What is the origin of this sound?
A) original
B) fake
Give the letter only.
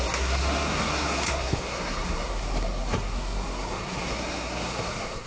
B